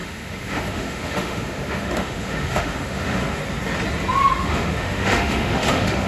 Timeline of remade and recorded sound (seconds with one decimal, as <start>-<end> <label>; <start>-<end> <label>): 0.0-3.4 remade; 3.4-4.3 recorded; 4.3-6.1 remade